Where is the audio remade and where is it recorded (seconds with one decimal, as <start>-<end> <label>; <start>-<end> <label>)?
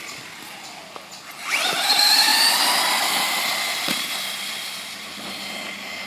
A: 0.0-6.1 recorded